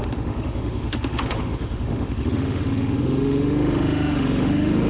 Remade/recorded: remade